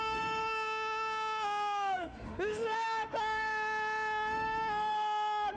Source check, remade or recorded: remade